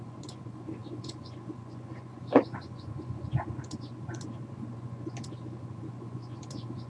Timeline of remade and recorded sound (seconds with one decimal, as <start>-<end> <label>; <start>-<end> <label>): 0.0-6.9 remade